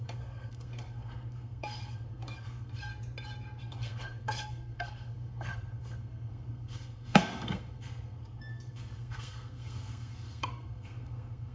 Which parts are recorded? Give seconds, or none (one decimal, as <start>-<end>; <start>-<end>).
2.9-3.6